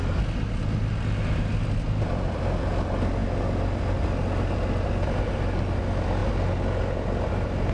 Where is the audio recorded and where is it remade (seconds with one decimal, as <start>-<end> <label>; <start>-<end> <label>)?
0.0-7.7 recorded